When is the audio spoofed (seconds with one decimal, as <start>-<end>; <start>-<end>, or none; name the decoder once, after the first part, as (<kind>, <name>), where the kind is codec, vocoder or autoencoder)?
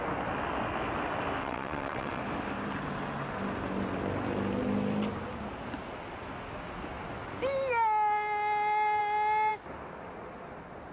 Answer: 1.4-2.2 (vocoder, WaveNeXt)